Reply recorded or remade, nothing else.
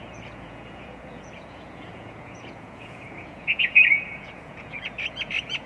remade